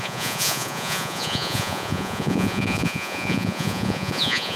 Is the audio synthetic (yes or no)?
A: yes